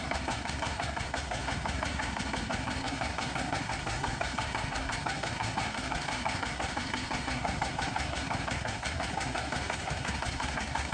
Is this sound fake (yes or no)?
yes